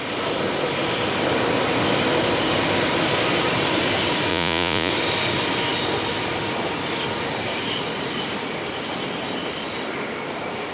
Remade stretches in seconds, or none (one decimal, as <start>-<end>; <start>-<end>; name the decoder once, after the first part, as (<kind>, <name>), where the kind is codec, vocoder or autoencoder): 4.3-4.9 (vocoder, Vocos)